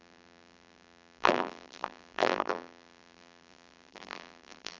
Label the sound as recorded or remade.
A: remade